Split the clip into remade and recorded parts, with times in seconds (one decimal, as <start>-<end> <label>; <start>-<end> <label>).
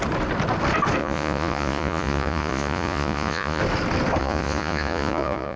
0.0-1.0 recorded; 1.0-3.6 remade; 3.6-4.2 recorded; 4.2-5.6 remade